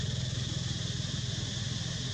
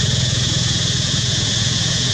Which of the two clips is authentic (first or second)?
first